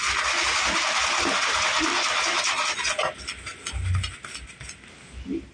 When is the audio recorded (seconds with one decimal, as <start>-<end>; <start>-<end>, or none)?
0.0-5.5

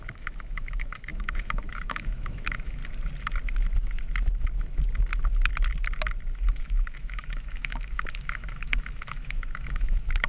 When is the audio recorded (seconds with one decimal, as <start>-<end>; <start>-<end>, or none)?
2.8-6.6

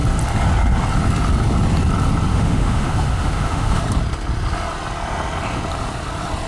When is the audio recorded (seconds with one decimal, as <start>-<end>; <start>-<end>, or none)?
0.0-2.3; 3.8-6.5

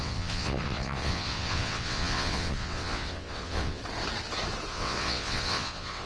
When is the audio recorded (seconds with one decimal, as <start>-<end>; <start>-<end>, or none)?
3.8-4.7

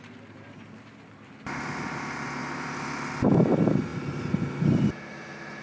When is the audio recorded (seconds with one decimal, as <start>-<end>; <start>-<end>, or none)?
0.0-5.6